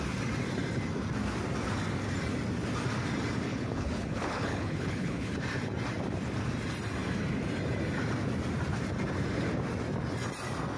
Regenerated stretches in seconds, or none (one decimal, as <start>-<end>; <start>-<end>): 3.5-5.3